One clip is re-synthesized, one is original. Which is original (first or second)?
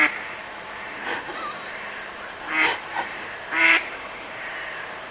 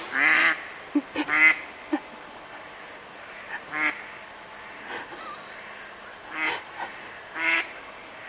second